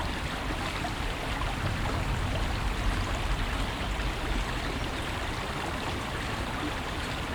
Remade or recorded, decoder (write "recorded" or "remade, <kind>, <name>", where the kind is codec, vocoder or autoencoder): remade, vocoder, BigVGAN v2